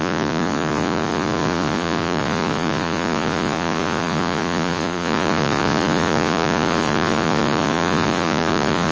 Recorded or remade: remade